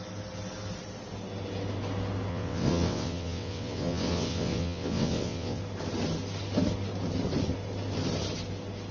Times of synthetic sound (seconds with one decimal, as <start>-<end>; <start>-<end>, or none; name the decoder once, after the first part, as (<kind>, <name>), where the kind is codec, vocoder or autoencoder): 2.3-5.6 (vocoder, WaveNeXt)